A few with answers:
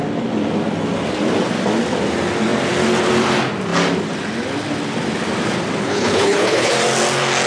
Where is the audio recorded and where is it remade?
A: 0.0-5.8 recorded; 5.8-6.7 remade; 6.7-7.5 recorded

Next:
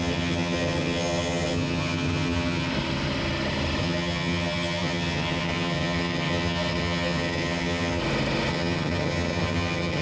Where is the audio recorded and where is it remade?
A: 0.0-2.7 remade; 2.7-3.8 recorded; 3.8-8.0 remade; 8.0-8.5 recorded; 8.5-10.0 remade